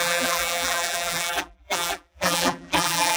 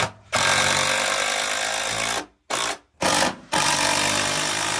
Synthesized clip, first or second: first